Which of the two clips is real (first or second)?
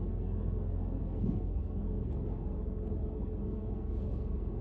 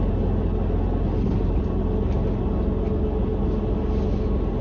second